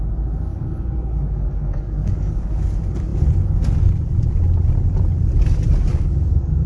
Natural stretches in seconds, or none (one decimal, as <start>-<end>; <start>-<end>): 0.0-0.5; 2.6-5.9